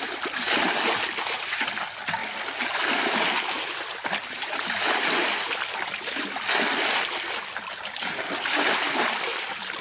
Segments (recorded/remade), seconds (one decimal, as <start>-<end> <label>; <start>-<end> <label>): 0.0-9.8 recorded